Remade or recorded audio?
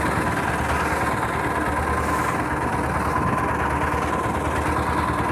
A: recorded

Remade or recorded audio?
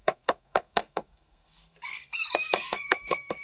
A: remade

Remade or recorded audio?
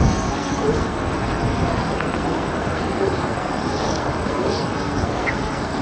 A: remade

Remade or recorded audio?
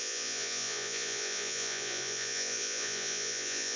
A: remade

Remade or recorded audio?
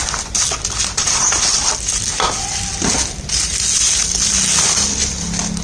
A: recorded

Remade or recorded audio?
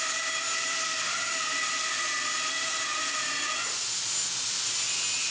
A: recorded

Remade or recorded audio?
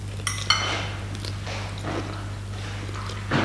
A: recorded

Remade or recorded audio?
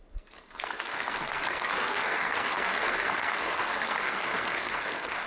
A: remade